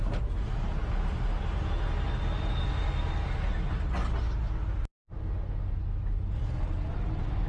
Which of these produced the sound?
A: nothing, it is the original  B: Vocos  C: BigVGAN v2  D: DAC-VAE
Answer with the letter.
A